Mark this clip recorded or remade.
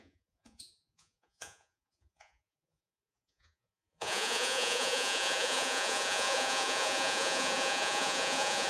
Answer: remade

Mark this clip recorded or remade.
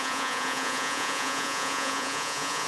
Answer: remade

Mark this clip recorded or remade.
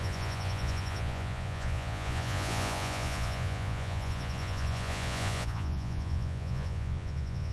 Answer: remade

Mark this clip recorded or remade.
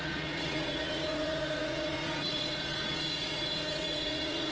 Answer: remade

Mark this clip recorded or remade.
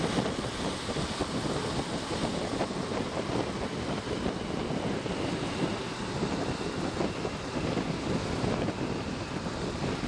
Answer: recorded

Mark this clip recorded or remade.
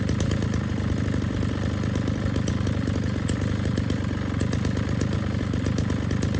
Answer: recorded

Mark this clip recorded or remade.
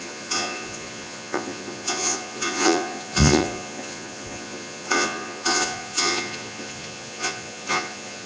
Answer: remade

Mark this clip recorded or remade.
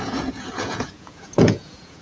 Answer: remade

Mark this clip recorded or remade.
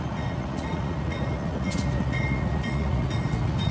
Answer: remade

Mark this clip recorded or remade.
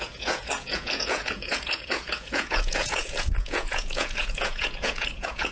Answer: remade